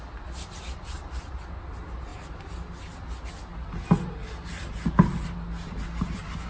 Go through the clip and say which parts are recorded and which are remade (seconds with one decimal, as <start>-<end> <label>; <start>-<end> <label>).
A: 0.0-6.5 recorded